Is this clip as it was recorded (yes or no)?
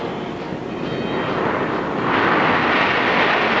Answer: yes